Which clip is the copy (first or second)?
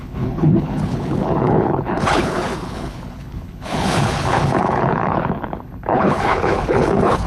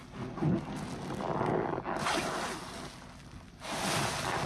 first